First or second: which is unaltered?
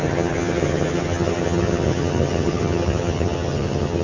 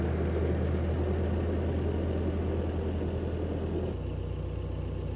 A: second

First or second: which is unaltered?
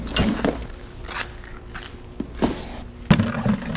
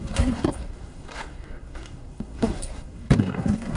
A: first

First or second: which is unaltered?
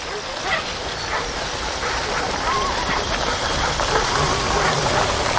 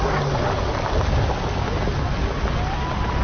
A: second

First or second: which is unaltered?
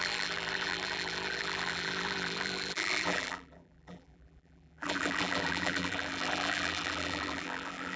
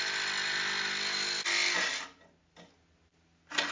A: second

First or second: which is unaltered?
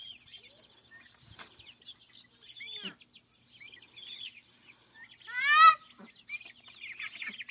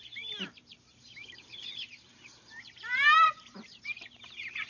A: first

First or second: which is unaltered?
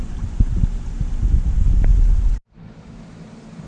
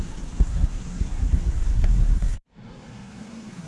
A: first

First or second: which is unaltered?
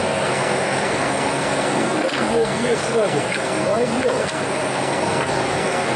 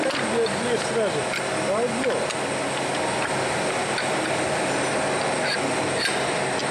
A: second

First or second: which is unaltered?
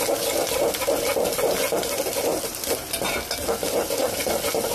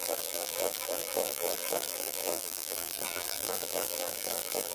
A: first